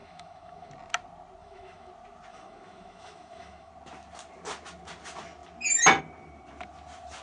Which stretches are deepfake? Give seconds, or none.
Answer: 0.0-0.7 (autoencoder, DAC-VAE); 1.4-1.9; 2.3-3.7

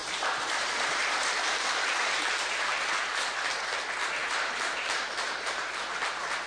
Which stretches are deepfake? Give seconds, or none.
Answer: 0.0-3.3 (vocoder, BigVGAN v2); 4.2-5.9

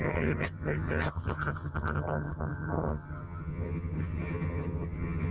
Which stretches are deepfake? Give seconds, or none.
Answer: 0.0-5.3 (vocoder, HiFi-GAN)

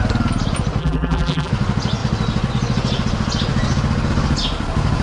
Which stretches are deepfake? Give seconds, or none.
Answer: 0.8-1.5 (vocoder, BigVGAN v2)

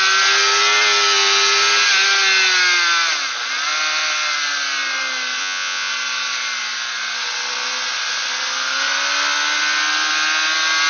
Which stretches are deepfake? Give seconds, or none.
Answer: 5.4-5.9 (vocoder, Vocos)

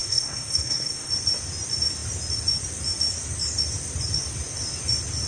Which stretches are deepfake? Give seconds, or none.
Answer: 0.0-1.1 (codec, SNAC)

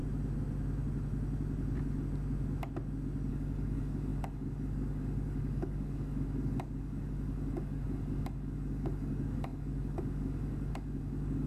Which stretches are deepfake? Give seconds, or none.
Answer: 3.3-11.5 (codec, DAC)

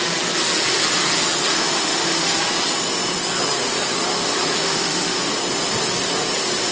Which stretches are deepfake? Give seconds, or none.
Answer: 1.5-2.3 (autoencoder, DAC-VAE); 4.6-5.3